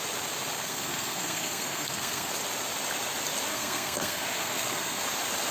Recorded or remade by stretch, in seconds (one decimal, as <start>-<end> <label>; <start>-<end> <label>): 0.0-0.6 recorded; 0.6-2.3 remade; 2.3-3.5 recorded; 3.5-5.0 remade; 5.0-5.5 recorded